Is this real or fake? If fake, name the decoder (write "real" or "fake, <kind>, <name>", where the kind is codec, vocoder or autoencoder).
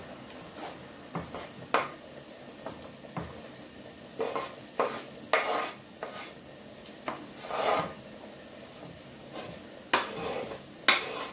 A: real